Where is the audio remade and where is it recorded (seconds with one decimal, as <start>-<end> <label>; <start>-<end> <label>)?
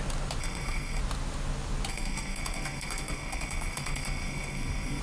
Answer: 0.0-0.4 recorded; 0.4-1.0 remade; 1.0-1.9 recorded; 1.9-5.0 remade